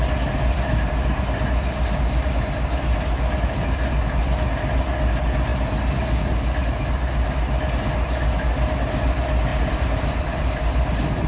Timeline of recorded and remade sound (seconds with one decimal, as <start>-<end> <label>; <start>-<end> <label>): 0.0-9.5 recorded; 9.5-11.3 remade